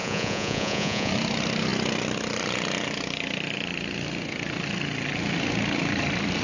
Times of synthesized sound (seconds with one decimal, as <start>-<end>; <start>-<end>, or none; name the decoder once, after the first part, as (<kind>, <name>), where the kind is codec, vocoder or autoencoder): 0.0-1.1 (vocoder, Vocos)

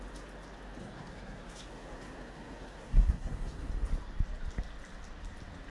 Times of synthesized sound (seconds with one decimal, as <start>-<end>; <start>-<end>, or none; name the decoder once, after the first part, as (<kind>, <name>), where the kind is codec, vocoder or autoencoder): 0.8-3.7 (codec, SNAC)

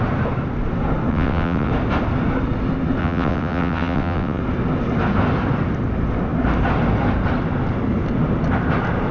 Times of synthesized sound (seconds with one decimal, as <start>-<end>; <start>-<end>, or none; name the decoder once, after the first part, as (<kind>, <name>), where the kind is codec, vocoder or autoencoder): 1.1-1.7 (vocoder, WaveNeXt); 3.0-4.4

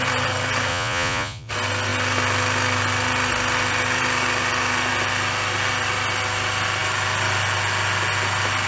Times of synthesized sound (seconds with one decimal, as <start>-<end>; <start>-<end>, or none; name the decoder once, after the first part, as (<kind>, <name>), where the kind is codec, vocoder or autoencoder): 0.7-1.5 (vocoder, Vocos)

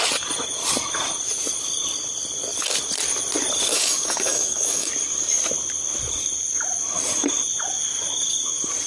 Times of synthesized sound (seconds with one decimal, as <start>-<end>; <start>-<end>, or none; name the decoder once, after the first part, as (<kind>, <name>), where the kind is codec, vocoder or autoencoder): 3.7-4.9 (codec, DAC)

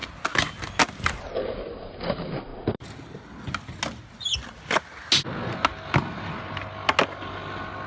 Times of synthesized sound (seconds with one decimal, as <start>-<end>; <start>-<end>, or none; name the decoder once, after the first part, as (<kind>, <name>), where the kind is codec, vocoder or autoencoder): 2.5-3.2 (vocoder, BigVGAN v2)

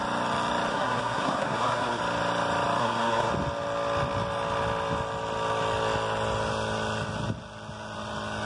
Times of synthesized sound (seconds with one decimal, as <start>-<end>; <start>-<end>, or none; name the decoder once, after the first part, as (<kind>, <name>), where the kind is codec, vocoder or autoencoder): 0.7-2.0 (codec, SNAC); 2.8-3.3

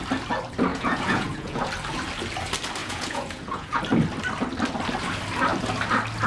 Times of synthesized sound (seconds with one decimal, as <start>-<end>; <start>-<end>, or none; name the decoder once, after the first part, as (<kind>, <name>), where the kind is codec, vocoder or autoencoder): 0.7-1.7 (vocoder, Vocos); 2.8-3.8